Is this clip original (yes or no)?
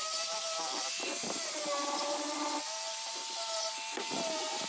yes